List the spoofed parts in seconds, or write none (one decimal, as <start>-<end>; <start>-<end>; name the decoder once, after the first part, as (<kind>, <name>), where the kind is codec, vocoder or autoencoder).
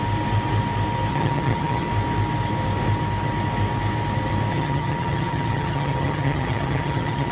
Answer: 1.1-1.9 (vocoder, HiFi-GAN); 4.5-7.3